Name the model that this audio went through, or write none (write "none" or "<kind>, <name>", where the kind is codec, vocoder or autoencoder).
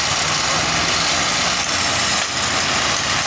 none